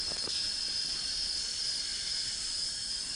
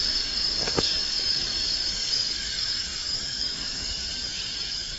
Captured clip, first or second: first